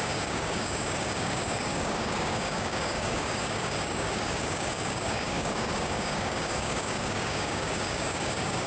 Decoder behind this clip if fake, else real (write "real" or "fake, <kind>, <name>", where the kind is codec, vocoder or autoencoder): fake, codec, DAC